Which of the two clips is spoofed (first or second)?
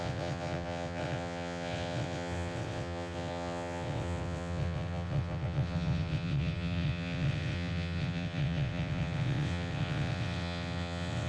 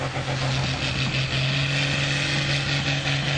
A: first